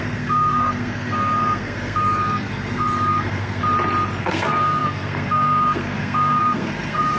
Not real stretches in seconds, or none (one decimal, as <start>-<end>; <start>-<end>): 0.0-3.6; 4.2-7.2